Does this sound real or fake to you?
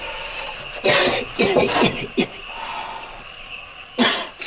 real